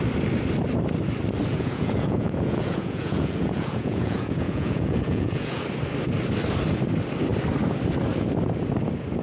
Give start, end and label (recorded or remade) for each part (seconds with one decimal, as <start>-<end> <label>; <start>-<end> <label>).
0.0-1.5 recorded; 1.5-5.6 remade; 5.6-9.2 recorded